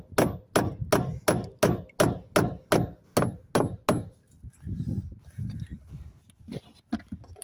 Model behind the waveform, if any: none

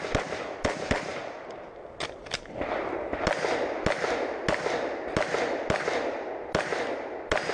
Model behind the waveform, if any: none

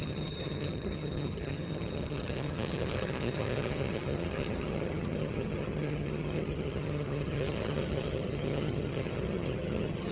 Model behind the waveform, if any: vocoder, HiFi-GAN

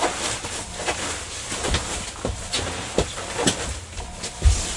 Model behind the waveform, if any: none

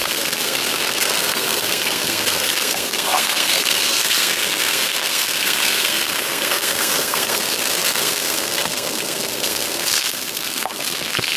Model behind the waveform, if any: codec, SNAC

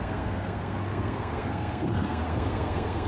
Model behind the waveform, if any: codec, SNAC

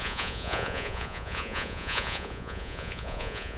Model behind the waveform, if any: vocoder, Vocos